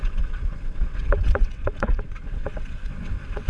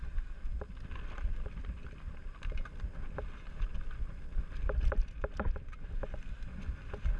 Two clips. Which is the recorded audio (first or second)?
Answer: second